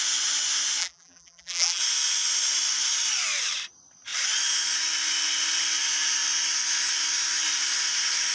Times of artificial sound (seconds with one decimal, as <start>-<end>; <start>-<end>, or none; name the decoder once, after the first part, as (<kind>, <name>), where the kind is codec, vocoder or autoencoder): 0.8-1.8 (vocoder, BigVGAN v2)